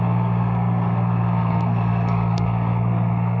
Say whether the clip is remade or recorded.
remade